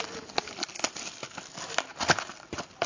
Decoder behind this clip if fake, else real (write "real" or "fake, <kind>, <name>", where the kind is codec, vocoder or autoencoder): real